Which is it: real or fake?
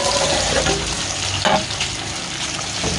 real